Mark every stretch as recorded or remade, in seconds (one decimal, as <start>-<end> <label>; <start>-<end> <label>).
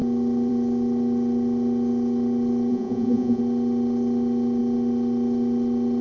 0.0-2.7 recorded; 2.7-3.4 remade; 3.4-6.0 recorded